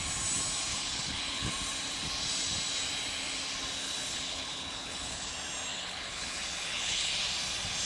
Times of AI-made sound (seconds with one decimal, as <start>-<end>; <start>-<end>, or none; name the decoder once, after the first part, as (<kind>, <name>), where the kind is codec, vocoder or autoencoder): 0.7-1.5 (codec, HILCodec); 3.8-5.3; 5.7-7.1